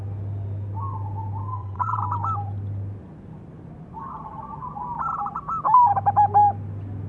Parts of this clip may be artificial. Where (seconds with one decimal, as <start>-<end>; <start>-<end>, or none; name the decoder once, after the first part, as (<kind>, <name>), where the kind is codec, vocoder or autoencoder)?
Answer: 1.5-2.0 (vocoder, WaveNeXt)